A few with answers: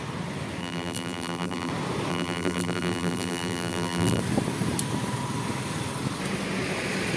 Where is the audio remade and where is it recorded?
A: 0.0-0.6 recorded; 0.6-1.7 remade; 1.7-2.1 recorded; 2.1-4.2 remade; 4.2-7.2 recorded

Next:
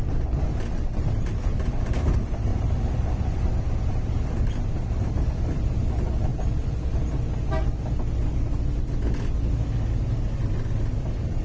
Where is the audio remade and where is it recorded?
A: 0.0-2.5 recorded; 2.5-3.4 remade; 3.4-11.4 recorded